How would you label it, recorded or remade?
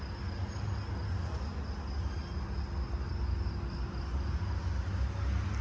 recorded